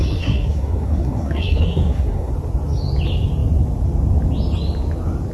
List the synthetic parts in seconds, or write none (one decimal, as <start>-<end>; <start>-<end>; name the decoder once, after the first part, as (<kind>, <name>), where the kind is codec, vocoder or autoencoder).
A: 0.0-2.3 (codec, SNAC)